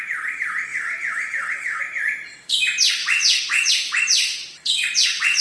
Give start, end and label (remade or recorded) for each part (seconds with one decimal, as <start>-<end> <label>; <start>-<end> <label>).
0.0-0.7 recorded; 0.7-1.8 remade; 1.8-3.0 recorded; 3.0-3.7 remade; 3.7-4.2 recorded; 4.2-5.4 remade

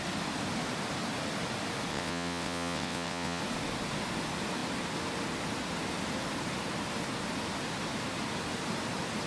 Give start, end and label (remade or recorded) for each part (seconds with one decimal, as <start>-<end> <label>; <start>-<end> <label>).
0.0-1.9 recorded; 1.9-3.4 remade; 3.4-9.3 recorded

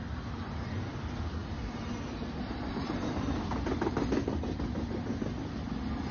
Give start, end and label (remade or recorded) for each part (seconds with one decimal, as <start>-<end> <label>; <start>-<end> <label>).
0.0-6.1 recorded

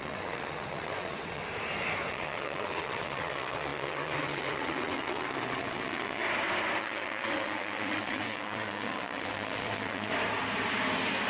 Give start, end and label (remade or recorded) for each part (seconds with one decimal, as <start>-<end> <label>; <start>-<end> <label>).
0.0-1.4 remade; 1.4-2.1 recorded; 2.1-6.2 remade; 6.2-6.8 recorded; 6.8-10.1 remade; 10.1-11.3 recorded

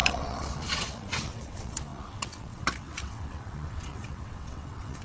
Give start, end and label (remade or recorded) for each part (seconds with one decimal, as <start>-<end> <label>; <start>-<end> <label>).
0.0-5.0 remade